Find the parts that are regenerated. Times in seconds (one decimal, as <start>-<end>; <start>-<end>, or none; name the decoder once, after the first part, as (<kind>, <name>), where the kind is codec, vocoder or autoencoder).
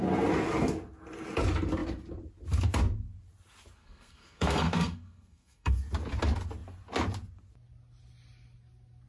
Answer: 3.8-5.8 (codec, SNAC)